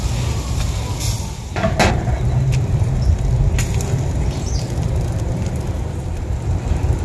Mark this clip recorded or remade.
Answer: recorded